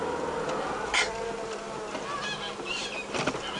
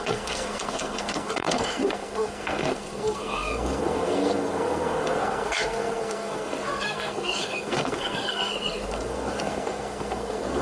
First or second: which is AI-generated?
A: second